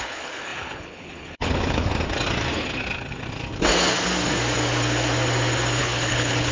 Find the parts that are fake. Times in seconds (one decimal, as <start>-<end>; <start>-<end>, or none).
0.0-1.9; 5.8-6.5